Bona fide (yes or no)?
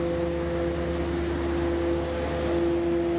yes